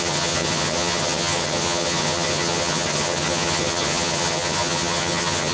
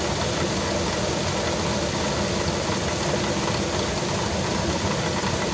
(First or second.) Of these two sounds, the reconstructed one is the first